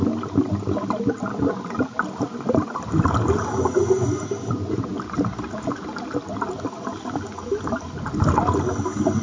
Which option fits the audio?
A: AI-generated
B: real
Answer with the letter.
B